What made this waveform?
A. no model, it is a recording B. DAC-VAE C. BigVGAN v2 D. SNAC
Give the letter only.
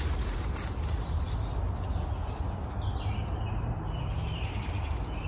A